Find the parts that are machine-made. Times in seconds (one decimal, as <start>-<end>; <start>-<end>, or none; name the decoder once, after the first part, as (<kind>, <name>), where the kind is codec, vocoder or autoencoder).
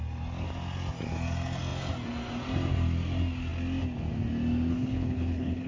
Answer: 4.7-5.7 (codec, HILCodec)